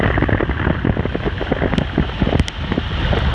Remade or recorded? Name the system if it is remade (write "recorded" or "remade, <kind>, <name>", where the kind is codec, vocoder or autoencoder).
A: recorded